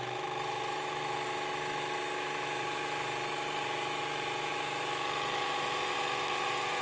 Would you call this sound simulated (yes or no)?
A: yes